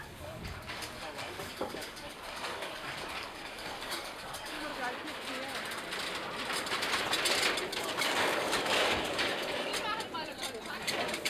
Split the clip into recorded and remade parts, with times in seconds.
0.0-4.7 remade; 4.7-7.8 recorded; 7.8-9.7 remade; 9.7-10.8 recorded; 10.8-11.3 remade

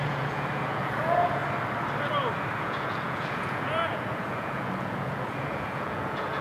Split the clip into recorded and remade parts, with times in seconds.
0.0-1.4 remade; 1.4-2.6 recorded; 2.6-6.4 remade

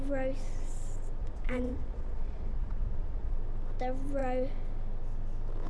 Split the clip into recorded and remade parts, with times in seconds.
0.0-1.2 recorded; 1.2-3.4 remade; 3.4-5.7 recorded